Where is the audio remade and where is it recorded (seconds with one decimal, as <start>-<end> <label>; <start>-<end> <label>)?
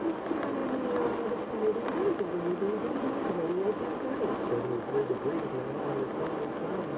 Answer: 0.0-7.0 recorded